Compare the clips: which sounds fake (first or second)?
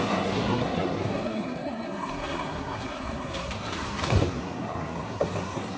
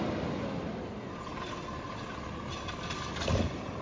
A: first